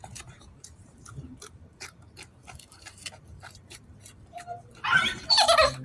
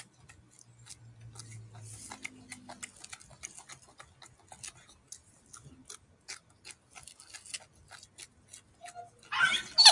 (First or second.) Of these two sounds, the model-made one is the first